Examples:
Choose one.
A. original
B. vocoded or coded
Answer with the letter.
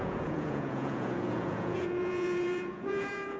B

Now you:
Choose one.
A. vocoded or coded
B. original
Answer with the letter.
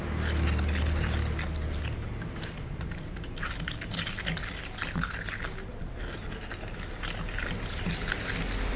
B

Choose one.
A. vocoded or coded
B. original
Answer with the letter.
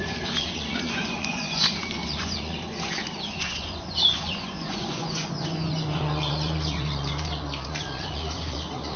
A